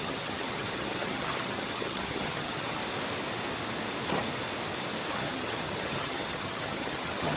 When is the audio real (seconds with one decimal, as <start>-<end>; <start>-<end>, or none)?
2.8-5.1